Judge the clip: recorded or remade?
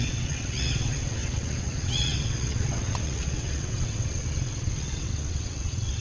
remade